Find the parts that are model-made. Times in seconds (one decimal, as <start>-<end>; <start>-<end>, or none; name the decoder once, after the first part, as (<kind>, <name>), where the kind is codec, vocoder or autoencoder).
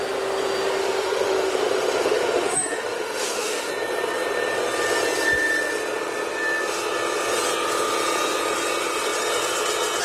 0.8-3.7 (autoencoder, DAC-VAE)